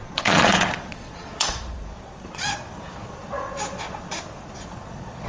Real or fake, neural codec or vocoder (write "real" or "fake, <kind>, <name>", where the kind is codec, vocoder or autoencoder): fake, vocoder, Vocos